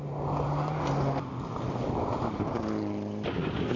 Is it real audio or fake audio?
real